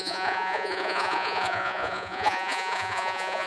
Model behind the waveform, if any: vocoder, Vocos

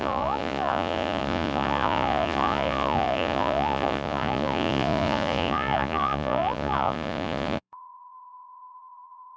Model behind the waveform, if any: vocoder, Vocos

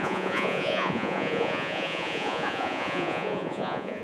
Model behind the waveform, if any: vocoder, Vocos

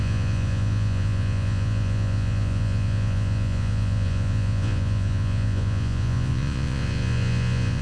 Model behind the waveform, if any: vocoder, Vocos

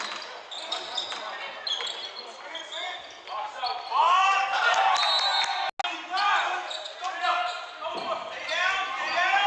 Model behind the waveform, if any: none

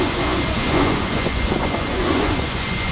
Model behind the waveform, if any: vocoder, Vocos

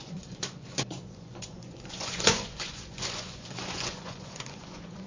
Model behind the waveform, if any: vocoder, Vocos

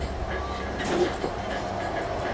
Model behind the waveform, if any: none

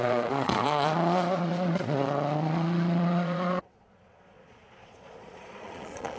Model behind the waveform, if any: vocoder, Vocos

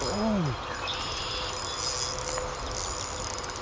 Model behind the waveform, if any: none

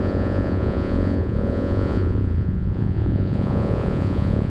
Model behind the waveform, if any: vocoder, Vocos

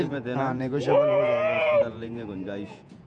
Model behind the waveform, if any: vocoder, Vocos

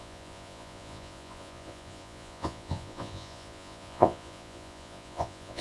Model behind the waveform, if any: vocoder, Vocos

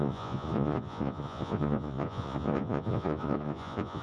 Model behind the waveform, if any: vocoder, Vocos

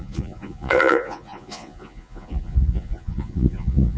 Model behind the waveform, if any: vocoder, Vocos